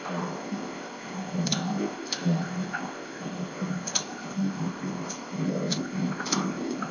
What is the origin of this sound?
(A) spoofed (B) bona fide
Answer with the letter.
A